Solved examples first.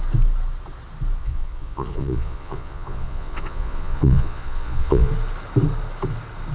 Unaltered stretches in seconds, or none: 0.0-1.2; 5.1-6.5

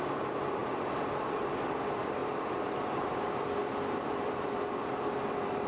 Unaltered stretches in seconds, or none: none

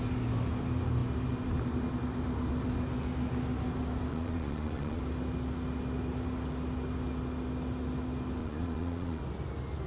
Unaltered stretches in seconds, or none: 0.0-4.1; 5.0-8.4; 9.2-9.9

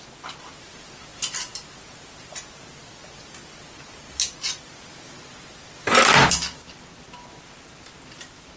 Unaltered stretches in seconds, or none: 0.0-8.6

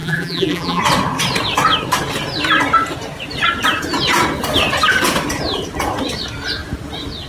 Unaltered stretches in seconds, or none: 0.8-7.3

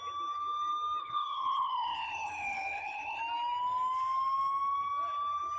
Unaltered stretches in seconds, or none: 0.0-1.0; 3.2-5.6

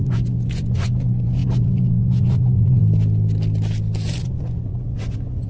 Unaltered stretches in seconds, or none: 2.8-4.1

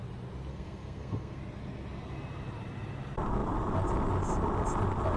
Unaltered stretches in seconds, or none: 0.0-0.5; 1.4-5.2